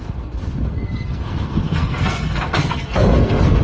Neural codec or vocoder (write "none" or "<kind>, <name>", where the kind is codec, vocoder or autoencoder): codec, SNAC